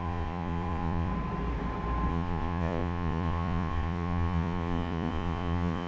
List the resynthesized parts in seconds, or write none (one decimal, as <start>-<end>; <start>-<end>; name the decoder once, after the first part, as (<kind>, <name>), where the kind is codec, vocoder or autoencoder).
0.0-1.1 (vocoder, Vocos); 2.1-5.9